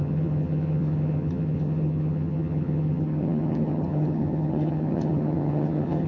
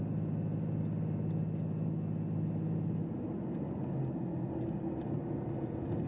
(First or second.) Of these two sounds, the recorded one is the second